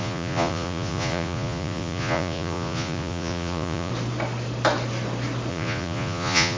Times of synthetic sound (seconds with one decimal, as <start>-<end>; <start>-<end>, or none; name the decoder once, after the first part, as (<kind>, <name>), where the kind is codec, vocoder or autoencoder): 0.0-3.9 (vocoder, Vocos); 5.5-6.6